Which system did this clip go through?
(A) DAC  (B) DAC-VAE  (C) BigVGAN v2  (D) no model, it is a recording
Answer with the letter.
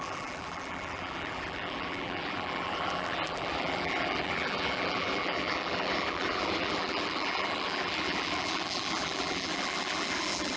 C